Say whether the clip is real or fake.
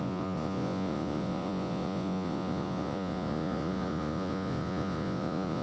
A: fake